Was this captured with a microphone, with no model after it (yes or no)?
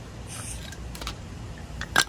no